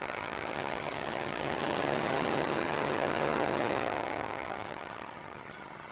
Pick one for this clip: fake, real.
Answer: fake